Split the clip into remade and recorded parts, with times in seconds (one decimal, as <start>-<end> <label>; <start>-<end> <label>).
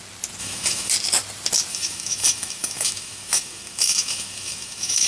0.0-0.4 recorded; 0.4-0.9 remade; 0.9-1.7 recorded; 1.7-5.1 remade